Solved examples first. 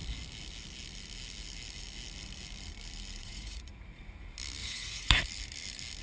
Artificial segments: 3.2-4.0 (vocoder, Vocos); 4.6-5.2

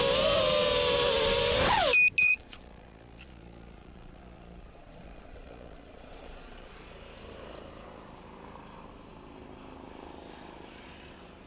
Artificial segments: 2.2-6.7 (vocoder, Vocos)

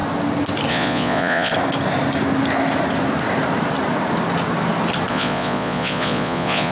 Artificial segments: 0.7-1.5 (vocoder, Vocos); 5.1-6.7

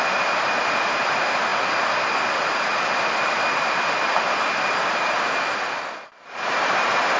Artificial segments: none

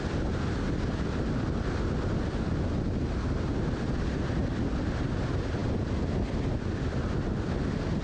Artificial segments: none

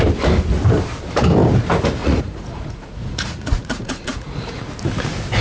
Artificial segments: 2.0-4.6 (vocoder, Vocos)